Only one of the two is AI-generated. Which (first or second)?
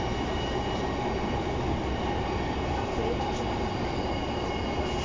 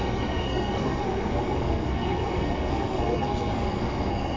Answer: second